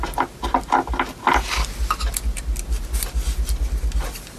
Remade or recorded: recorded